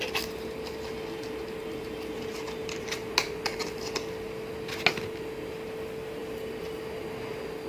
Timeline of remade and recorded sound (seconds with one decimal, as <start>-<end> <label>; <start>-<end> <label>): 0.0-7.7 recorded

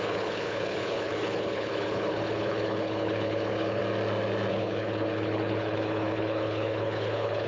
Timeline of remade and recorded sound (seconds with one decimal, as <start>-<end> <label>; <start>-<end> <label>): 0.0-3.8 remade; 3.8-4.5 recorded; 4.5-7.5 remade

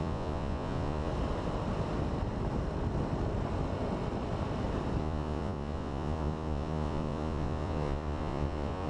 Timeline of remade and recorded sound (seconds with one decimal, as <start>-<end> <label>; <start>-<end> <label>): 0.0-1.1 remade; 1.1-5.0 recorded; 5.0-8.9 remade